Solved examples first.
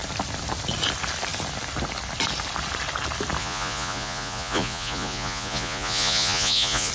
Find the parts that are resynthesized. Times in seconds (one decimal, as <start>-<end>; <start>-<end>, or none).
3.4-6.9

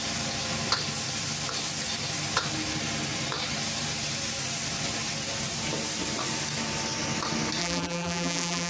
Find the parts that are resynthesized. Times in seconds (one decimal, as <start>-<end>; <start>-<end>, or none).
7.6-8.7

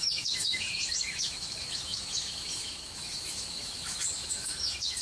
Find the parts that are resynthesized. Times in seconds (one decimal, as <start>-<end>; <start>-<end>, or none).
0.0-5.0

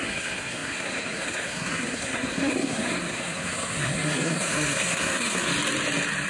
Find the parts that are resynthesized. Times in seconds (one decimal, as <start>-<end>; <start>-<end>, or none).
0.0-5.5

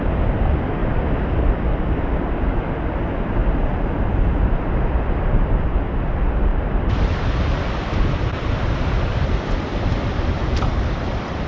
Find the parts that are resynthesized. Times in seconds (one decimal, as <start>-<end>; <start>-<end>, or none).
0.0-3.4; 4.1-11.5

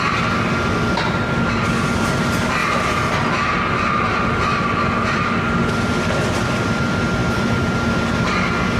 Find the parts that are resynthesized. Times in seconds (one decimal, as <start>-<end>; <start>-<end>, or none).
none